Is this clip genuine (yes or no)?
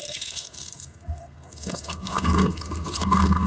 no